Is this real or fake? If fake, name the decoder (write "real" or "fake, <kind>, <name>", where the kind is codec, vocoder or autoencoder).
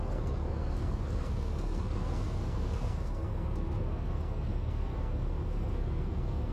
fake, codec, SNAC